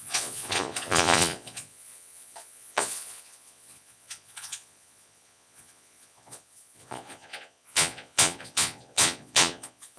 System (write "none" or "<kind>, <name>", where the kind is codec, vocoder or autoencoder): vocoder, Vocos